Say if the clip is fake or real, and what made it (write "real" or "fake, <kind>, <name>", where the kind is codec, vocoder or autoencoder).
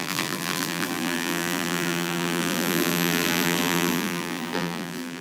fake, vocoder, BigVGAN v2